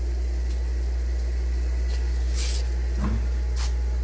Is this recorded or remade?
recorded